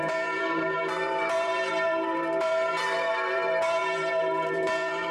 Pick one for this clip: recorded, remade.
remade